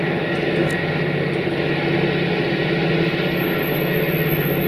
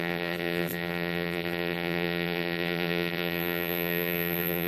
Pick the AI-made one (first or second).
second